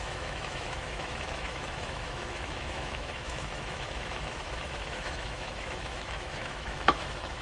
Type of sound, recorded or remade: remade